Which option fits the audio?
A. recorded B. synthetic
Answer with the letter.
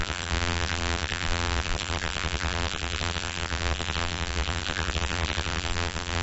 B